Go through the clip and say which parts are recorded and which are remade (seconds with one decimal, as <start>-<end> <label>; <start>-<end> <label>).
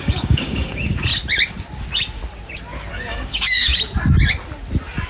0.0-1.1 remade; 1.1-2.9 recorded; 2.9-3.7 remade; 3.7-5.1 recorded